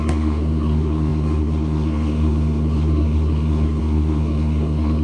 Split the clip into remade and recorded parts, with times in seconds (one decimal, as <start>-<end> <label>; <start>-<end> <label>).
0.0-5.0 remade